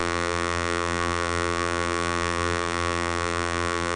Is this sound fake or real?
fake